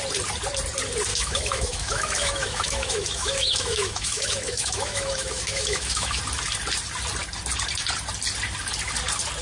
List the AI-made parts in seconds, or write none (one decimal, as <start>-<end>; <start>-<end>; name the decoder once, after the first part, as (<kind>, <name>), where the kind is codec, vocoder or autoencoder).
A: 1.1-6.2 (autoencoder, DAC-VAE)